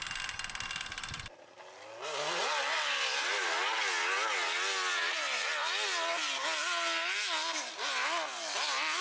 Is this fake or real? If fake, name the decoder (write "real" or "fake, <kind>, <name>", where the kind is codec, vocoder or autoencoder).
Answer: real